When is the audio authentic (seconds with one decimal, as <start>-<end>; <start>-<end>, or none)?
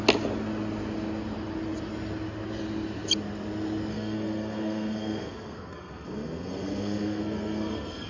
0.0-3.9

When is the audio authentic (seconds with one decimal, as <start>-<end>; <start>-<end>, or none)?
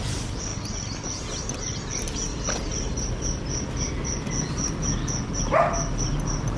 0.0-6.6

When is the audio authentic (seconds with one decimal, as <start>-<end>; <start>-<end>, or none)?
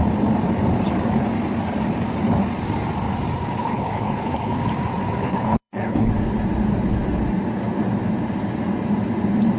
0.0-3.6; 4.6-5.2; 6.1-9.6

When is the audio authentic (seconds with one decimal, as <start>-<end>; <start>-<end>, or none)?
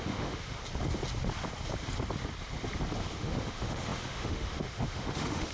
0.6-3.2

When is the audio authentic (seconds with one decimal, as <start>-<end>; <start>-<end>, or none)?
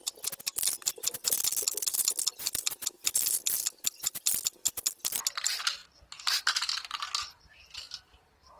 0.0-8.6